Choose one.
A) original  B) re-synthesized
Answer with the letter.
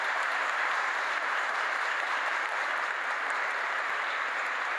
B